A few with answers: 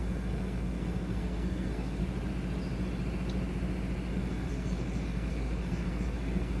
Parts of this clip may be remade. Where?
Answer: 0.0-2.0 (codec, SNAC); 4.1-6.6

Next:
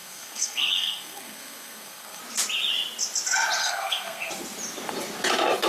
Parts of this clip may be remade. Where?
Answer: 0.0-2.2 (codec, SNAC); 3.6-4.3